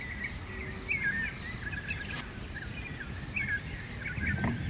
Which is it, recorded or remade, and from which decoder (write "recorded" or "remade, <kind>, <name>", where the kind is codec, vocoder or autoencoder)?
recorded